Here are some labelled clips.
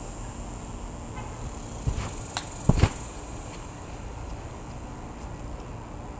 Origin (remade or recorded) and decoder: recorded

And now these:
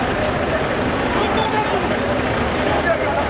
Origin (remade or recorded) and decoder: recorded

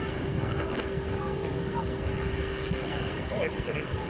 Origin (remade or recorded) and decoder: remade, codec, SNAC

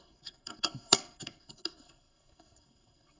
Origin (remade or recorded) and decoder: remade, codec, SNAC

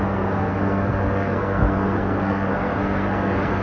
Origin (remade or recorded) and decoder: remade, codec, SNAC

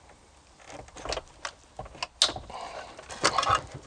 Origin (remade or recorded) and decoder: recorded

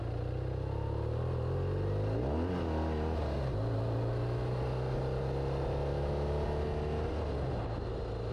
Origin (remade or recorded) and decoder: recorded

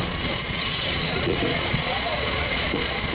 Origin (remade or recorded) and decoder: remade, vocoder, Vocos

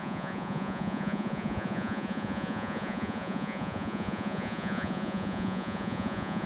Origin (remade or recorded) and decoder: remade, vocoder, Vocos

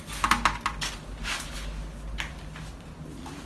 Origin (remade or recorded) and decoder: recorded